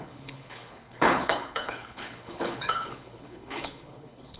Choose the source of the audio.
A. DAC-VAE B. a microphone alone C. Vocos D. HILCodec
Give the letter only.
D